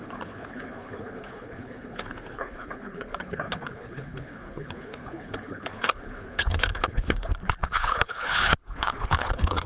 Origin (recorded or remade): remade